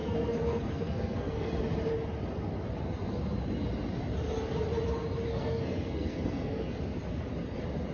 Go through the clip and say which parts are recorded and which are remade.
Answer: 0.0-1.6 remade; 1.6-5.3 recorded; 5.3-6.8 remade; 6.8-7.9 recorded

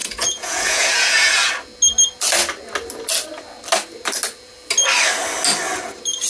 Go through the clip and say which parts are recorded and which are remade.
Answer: 0.0-1.5 remade; 1.5-6.3 recorded

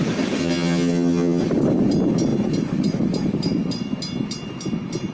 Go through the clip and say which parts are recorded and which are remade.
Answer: 0.0-0.4 recorded; 0.4-1.4 remade; 1.4-5.1 recorded

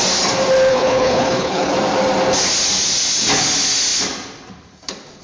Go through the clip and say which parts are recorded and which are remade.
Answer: 0.0-0.7 recorded; 0.7-1.7 remade; 1.7-5.2 recorded

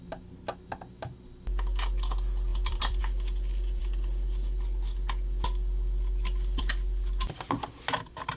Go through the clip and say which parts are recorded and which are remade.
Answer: 0.0-2.5 recorded; 2.5-3.0 remade; 3.0-8.4 recorded

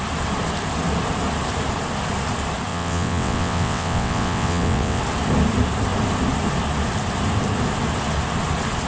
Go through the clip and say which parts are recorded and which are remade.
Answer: 0.0-2.7 recorded; 2.7-5.0 remade; 5.0-8.9 recorded